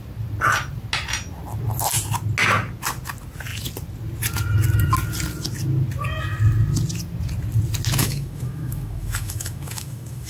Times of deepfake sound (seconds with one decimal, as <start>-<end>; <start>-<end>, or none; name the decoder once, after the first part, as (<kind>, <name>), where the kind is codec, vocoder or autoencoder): 8.0-10.3 (autoencoder, DAC-VAE)

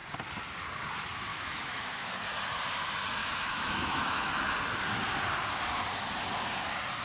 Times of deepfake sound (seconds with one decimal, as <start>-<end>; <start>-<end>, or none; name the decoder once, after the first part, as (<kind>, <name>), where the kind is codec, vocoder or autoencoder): 1.3-2.1 (autoencoder, DAC-VAE); 3.2-4.3

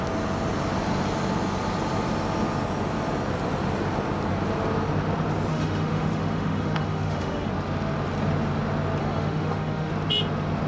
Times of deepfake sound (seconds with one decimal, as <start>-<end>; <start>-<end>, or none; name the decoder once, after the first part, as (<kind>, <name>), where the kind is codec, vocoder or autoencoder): 5.5-7.5 (autoencoder, DAC-VAE); 9.0-9.9

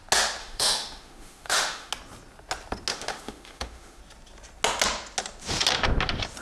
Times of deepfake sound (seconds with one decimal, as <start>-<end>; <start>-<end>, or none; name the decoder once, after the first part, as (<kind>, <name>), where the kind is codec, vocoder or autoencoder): 0.4-1.9 (autoencoder, DAC-VAE); 2.9-4.0

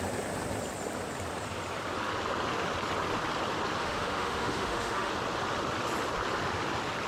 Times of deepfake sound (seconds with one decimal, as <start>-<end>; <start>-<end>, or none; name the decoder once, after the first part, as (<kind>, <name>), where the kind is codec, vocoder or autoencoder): 3.8-5.1 (autoencoder, DAC-VAE)

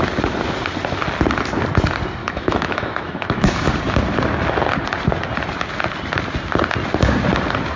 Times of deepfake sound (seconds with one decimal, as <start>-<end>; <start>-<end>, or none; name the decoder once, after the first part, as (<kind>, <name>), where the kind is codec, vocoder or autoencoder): 2.2-3.7 (autoencoder, DAC-VAE)

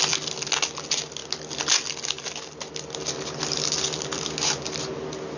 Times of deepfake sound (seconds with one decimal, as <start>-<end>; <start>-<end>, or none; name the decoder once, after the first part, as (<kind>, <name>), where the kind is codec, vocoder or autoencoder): none

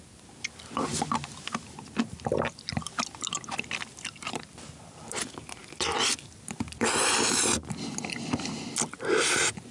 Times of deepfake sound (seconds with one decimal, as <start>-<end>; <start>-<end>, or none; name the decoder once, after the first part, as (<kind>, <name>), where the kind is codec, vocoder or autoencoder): none